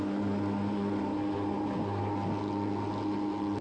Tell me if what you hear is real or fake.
real